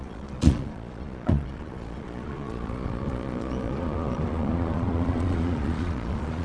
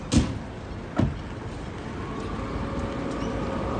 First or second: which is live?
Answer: second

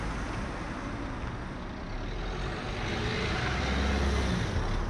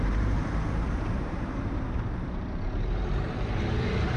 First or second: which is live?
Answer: first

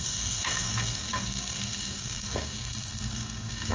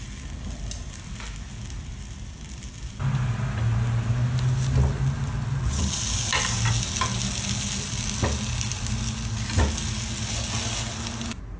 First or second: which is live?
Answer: second